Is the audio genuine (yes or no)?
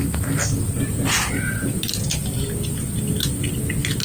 yes